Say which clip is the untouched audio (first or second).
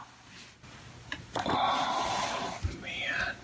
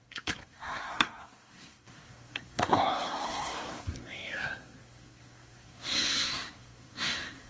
first